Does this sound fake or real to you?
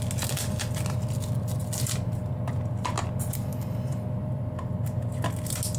real